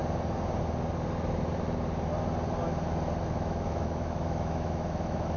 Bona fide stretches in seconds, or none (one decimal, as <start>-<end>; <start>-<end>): 0.0-3.2